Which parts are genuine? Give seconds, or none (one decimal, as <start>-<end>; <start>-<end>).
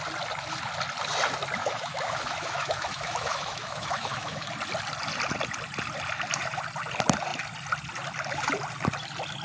0.0-1.6; 4.5-9.4